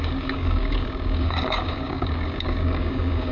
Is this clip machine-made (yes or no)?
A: yes